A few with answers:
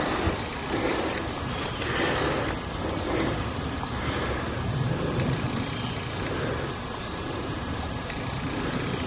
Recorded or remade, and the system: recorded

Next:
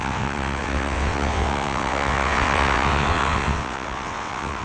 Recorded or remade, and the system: remade, vocoder, WaveNeXt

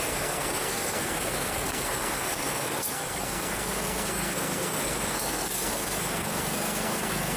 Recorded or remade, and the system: remade, codec, SNAC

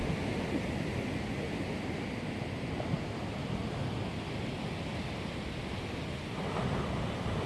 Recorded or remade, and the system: recorded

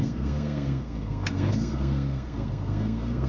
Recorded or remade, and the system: remade, codec, SNAC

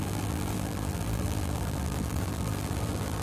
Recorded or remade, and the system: remade, vocoder, BigVGAN v2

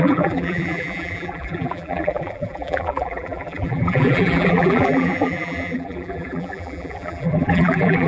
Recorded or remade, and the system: remade, vocoder, BigVGAN v2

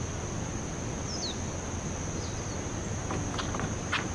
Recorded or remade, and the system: recorded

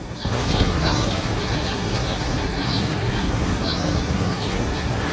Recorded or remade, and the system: remade, codec, SNAC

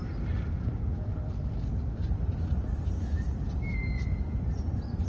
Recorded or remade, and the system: recorded